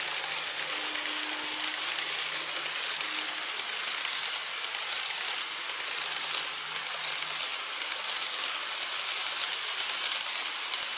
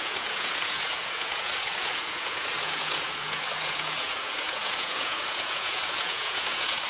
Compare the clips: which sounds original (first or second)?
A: first